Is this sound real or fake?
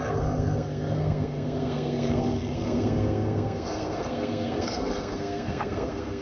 fake